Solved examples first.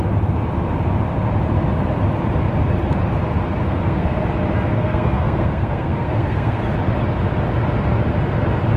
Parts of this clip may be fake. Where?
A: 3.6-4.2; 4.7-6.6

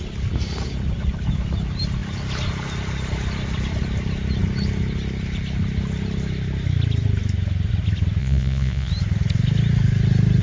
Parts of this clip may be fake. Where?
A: 8.2-8.9